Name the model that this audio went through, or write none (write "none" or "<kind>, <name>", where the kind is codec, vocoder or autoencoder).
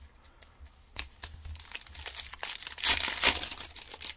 none